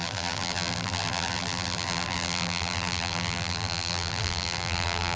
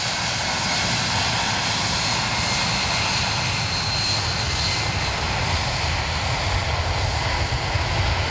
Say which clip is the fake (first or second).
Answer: first